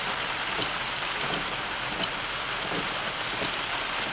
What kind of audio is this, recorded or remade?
remade